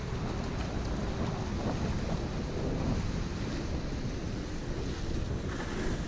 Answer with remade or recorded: recorded